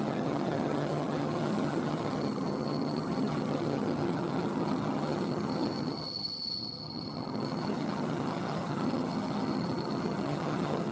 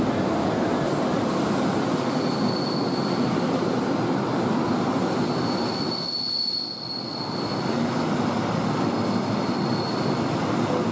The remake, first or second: first